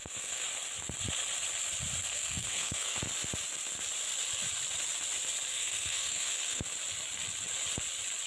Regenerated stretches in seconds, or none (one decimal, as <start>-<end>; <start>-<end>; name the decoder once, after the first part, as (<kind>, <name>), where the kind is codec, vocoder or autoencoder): 0.0-0.5 (codec, SNAC); 2.1-3.0; 5.5-6.6